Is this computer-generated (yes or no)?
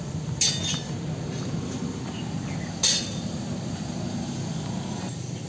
no